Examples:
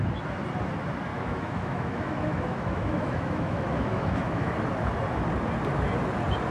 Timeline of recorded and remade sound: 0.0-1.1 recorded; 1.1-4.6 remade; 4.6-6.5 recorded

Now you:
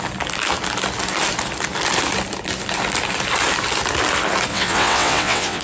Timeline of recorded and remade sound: 0.0-4.5 recorded; 4.5-5.6 remade

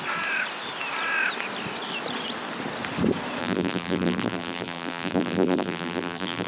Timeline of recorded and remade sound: 0.0-3.4 recorded; 3.4-6.5 remade

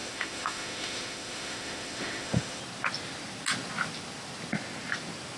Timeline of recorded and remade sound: 0.0-2.6 remade; 2.6-5.4 recorded

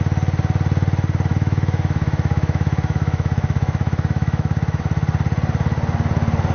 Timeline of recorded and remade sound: 0.0-1.3 recorded; 1.3-4.8 remade; 4.8-6.5 recorded

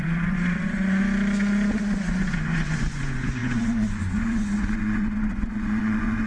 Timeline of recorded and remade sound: 0.0-1.0 remade; 1.0-1.8 recorded; 1.8-6.3 remade

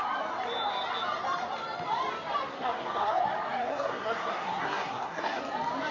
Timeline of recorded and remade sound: 0.0-2.5 recorded; 2.5-3.2 remade; 3.2-3.6 recorded; 3.6-5.4 remade; 5.4-5.9 recorded